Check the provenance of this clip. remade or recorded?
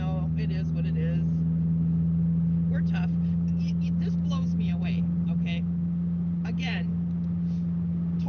recorded